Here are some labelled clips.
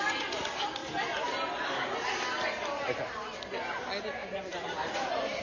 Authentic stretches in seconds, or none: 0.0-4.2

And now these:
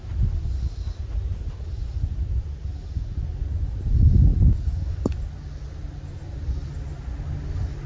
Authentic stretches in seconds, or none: 0.0-1.8; 3.2-7.9

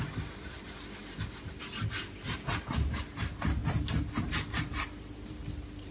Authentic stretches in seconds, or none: 3.6-4.2

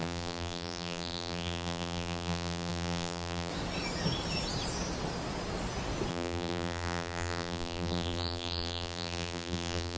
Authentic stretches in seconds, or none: 3.5-6.1